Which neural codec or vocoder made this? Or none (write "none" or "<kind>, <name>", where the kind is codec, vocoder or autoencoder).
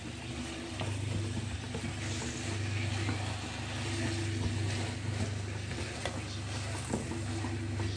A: none